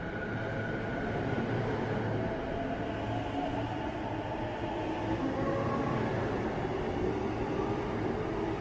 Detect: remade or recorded recorded